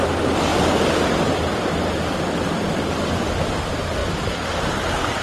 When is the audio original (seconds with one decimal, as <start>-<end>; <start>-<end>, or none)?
0.0-0.5; 3.6-5.2